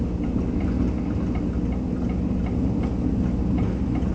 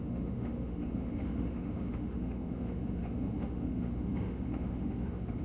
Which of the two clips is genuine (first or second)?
first